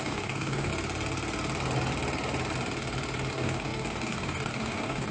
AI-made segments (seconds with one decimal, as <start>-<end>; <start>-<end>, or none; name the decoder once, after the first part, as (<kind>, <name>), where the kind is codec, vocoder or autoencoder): 0.0-0.7 (codec, DAC); 3.3-5.1